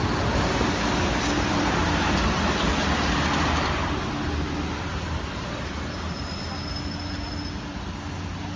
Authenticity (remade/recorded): recorded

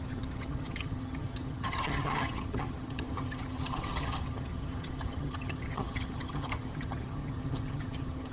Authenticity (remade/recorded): remade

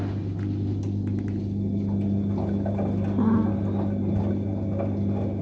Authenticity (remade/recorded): recorded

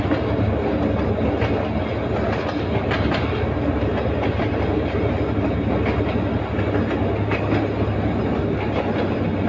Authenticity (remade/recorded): recorded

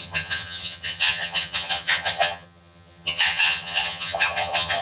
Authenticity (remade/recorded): remade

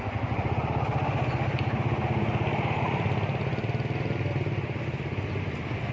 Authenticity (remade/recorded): recorded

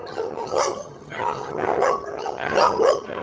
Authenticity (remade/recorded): remade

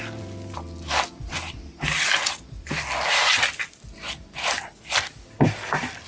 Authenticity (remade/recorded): recorded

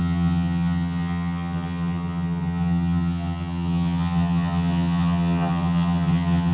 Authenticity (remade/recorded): remade